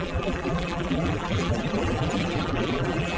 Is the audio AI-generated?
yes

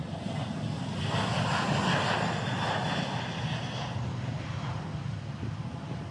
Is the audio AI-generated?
no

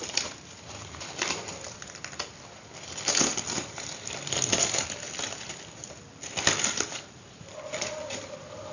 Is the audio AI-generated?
no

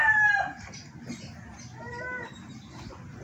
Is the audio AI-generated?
yes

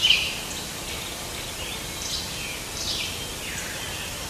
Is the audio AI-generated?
no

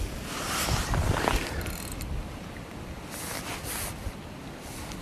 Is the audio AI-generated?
no